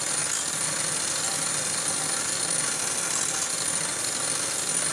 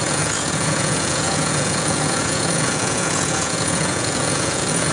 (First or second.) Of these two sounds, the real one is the first